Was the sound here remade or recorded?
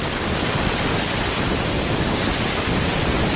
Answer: recorded